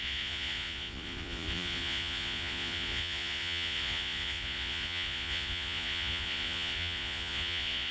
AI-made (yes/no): yes